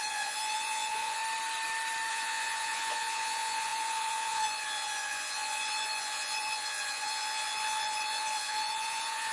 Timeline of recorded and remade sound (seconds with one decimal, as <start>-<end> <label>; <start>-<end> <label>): 0.0-1.2 remade; 1.2-2.1 recorded; 2.1-9.3 remade